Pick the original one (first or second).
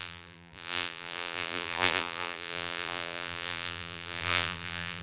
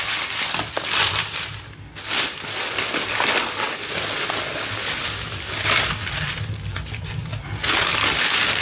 second